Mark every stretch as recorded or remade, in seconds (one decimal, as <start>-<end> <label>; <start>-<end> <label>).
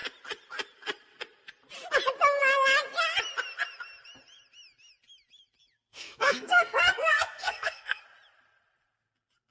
0.0-5.9 recorded; 5.9-8.0 remade; 8.0-9.5 recorded